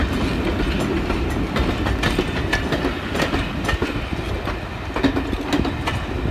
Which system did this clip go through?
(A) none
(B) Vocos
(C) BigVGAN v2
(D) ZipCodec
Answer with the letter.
A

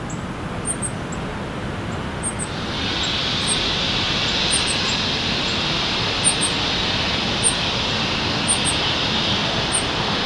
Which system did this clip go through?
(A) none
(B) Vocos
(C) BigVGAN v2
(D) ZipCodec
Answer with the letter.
A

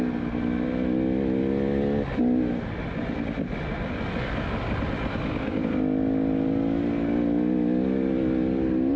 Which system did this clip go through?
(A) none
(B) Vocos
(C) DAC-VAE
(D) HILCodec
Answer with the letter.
A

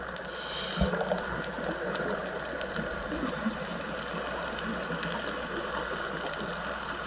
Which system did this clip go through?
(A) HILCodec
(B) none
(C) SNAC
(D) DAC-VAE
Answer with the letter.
B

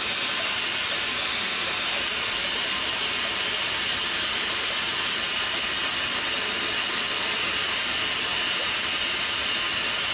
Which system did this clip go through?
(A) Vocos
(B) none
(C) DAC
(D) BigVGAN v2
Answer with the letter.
B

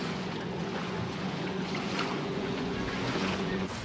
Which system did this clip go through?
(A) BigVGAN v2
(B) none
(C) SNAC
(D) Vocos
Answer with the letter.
D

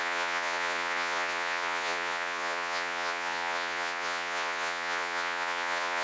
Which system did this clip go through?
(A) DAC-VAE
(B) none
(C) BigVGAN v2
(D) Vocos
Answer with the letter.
D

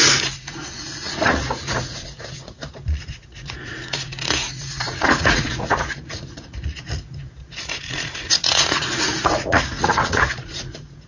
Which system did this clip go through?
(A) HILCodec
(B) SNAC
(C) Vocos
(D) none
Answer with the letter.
C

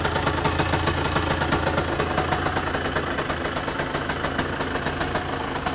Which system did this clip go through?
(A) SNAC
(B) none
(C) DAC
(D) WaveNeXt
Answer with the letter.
B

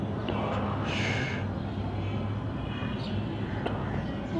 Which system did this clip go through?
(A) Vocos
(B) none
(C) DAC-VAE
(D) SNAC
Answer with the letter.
B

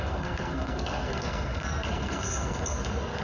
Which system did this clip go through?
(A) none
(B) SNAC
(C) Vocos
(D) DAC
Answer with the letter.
B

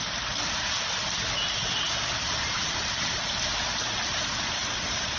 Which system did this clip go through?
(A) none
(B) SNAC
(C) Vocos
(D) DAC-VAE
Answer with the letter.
A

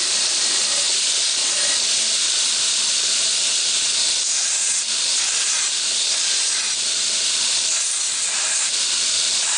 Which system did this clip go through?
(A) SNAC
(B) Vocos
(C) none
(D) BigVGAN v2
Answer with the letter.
C